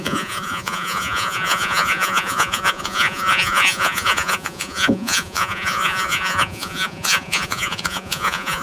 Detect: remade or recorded remade